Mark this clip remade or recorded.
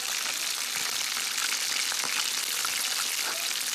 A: recorded